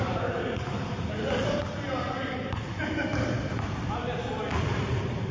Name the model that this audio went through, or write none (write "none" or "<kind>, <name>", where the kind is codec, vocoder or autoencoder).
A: vocoder, BigVGAN v2